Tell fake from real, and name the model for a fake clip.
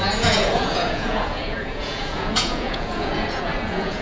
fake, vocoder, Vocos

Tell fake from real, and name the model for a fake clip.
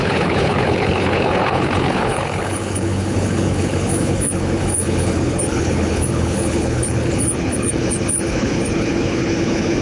fake, codec, HILCodec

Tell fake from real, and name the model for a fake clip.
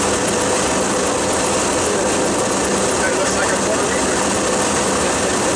real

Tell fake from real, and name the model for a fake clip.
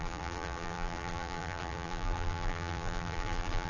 fake, vocoder, BigVGAN v2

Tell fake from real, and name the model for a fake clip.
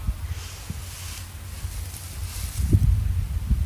real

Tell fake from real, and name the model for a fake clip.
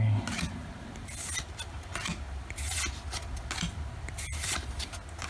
real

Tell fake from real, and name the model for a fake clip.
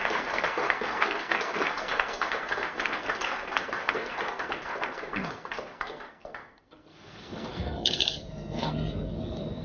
fake, codec, SNAC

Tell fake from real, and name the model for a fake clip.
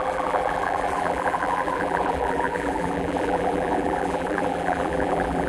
fake, vocoder, BigVGAN v2